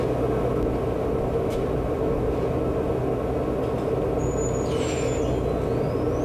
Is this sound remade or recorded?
recorded